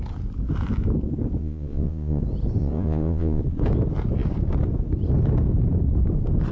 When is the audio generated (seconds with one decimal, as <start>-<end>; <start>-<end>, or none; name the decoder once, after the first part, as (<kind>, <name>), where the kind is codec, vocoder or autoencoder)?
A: 1.4-2.2 (vocoder, Vocos); 2.6-3.4